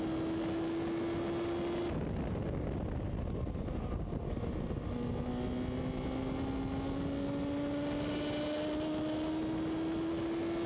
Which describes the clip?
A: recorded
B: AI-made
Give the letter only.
A